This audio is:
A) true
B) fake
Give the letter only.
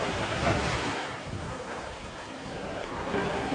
B